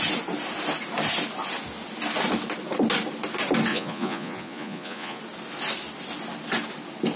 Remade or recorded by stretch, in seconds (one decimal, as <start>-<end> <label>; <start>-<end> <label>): 0.0-3.7 recorded; 3.7-5.2 remade; 5.2-7.2 recorded